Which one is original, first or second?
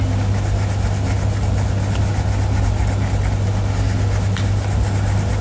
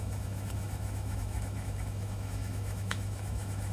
first